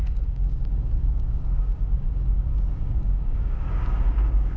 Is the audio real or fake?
fake